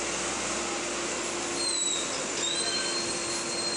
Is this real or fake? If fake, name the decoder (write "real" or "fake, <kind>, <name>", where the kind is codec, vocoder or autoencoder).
real